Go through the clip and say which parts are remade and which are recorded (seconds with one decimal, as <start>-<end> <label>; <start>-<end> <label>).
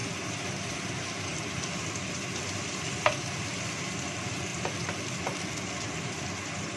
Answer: 0.0-6.8 recorded